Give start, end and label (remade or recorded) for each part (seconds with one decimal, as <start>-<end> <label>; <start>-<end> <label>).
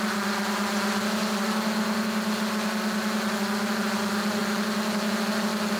0.0-5.8 recorded